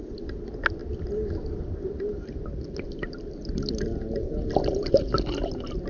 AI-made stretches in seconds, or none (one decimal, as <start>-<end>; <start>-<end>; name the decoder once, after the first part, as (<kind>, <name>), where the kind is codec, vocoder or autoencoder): none